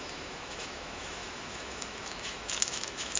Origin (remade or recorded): remade